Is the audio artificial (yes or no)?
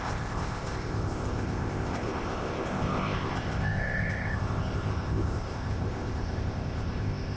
yes